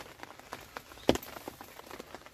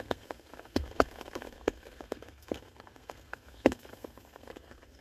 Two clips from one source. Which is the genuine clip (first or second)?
first